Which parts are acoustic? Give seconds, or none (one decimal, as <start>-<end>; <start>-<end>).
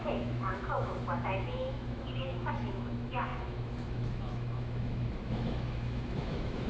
none